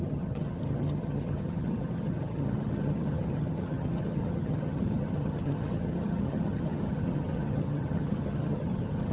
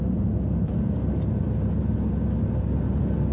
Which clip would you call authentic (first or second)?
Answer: second